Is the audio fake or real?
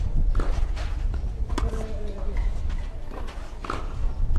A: real